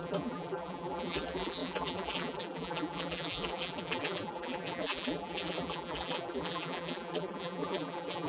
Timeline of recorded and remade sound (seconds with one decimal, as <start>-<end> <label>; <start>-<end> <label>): 0.0-8.3 remade